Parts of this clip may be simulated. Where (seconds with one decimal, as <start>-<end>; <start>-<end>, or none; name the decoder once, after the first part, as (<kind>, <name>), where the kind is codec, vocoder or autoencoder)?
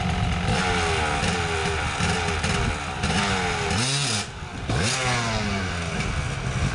none